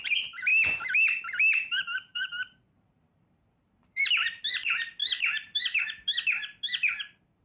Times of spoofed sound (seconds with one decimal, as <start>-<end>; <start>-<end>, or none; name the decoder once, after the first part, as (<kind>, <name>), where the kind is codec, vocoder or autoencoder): 0.5-4.1 (vocoder, BigVGAN v2); 5.0-5.8; 6.4-7.4